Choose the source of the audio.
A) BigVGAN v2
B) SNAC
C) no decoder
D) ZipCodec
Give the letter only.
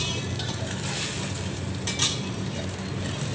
C